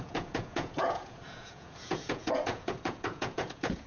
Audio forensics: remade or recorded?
remade